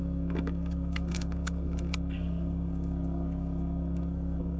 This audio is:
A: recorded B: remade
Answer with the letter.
B